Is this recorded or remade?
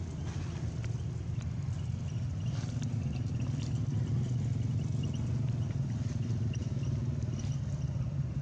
recorded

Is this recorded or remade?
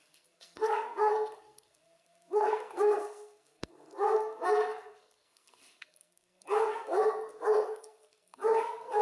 remade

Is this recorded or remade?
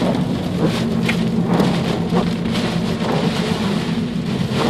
recorded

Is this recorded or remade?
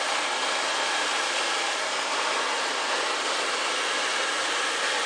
recorded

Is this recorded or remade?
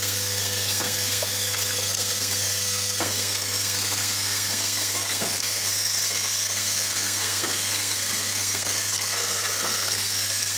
remade